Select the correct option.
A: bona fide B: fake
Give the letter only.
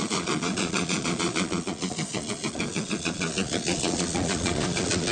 B